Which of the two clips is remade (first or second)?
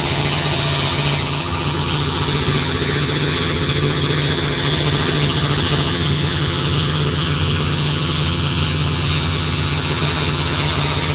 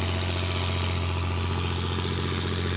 first